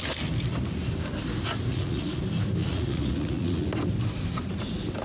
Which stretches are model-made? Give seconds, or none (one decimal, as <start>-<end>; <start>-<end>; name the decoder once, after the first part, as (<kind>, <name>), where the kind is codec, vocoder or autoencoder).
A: 1.7-2.2 (vocoder, Vocos); 2.6-3.7